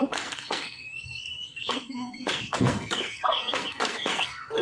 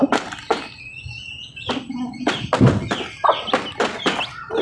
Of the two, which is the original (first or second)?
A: second